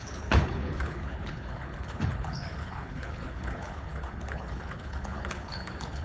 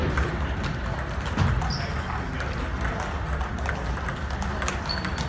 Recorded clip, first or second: second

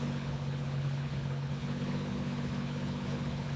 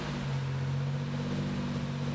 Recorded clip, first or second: second